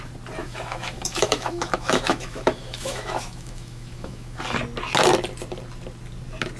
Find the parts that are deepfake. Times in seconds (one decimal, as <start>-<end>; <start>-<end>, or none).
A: 0.4-4.4